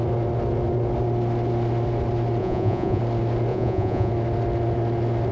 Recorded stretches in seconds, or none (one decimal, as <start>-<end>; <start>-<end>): 0.0-2.4; 3.0-3.5; 4.1-5.3